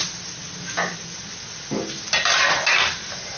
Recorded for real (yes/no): yes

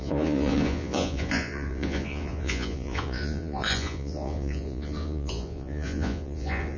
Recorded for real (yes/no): no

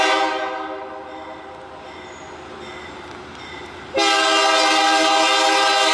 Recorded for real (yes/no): yes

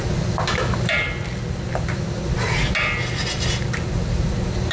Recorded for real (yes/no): yes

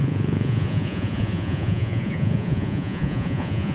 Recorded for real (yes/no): no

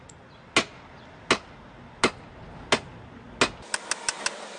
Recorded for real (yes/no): yes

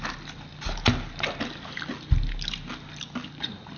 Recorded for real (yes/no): yes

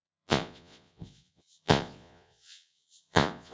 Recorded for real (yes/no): no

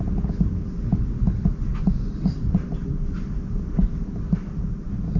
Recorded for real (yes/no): yes